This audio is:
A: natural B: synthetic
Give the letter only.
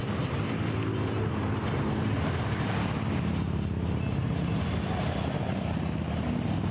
A